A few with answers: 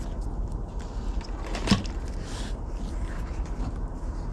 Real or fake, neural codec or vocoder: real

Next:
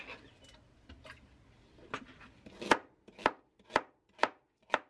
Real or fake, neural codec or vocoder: real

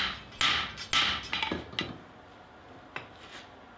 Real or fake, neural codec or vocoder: real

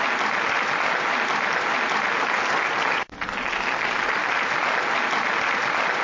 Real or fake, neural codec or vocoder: real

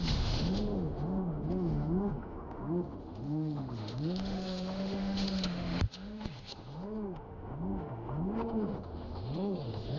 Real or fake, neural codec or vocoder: fake, autoencoder, DAC-VAE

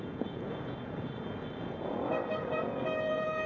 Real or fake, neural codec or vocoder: fake, vocoder, Vocos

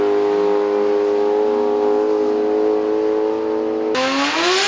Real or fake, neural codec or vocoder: real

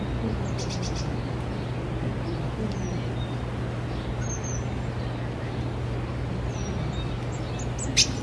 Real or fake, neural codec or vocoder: real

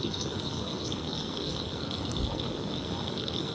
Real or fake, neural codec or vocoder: fake, codec, SNAC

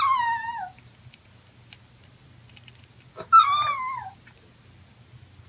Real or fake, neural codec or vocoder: real